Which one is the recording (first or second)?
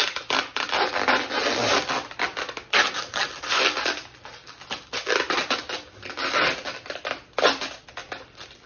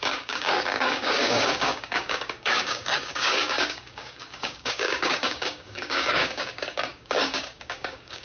first